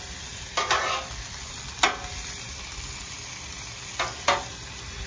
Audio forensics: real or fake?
real